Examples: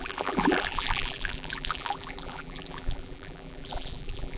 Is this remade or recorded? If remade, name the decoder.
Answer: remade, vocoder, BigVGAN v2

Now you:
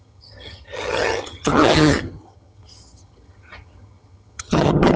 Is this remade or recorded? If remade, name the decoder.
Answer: remade, vocoder, HiFi-GAN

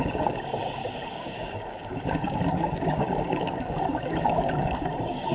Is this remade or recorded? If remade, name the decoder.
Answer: remade, codec, DAC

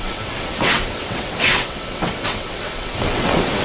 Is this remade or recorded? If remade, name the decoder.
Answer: remade, vocoder, WaveNeXt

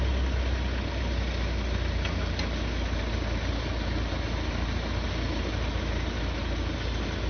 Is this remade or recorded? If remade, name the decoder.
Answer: recorded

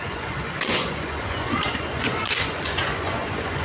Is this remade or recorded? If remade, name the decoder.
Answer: remade, vocoder, Vocos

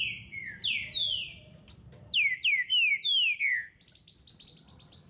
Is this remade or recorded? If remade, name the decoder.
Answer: recorded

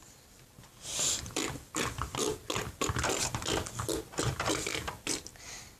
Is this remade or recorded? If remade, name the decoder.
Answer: recorded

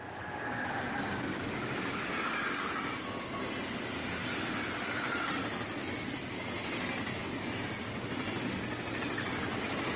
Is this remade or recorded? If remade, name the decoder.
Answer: recorded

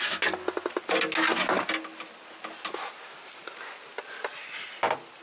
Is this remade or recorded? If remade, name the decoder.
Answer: recorded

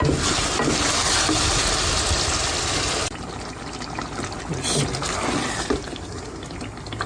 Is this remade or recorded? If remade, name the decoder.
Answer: recorded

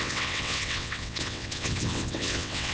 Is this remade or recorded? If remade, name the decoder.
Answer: remade, vocoder, WaveNeXt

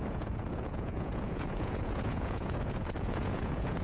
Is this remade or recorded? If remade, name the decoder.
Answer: remade, vocoder, Vocos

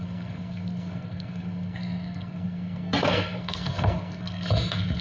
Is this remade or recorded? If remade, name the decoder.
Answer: remade, codec, SNAC